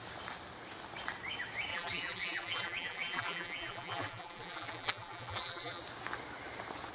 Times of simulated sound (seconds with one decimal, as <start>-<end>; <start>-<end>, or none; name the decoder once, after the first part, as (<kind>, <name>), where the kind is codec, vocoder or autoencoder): 1.7-5.8 (vocoder, BigVGAN v2)